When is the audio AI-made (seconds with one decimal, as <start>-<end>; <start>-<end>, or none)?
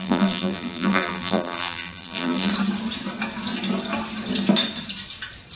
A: 0.0-2.5